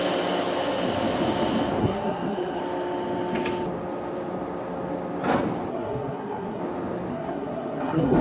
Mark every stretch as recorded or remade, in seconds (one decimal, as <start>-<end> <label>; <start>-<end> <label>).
0.0-1.8 recorded; 1.8-2.6 remade; 2.6-5.7 recorded; 5.7-6.6 remade; 6.6-7.1 recorded; 7.1-8.2 remade